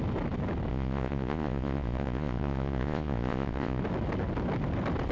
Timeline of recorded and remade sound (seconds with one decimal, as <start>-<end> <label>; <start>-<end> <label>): 0.0-0.7 recorded; 0.7-3.8 remade; 3.8-5.1 recorded